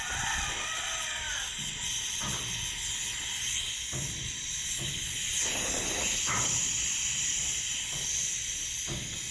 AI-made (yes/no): no